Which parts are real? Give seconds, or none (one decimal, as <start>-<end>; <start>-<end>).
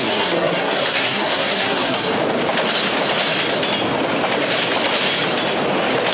2.1-6.1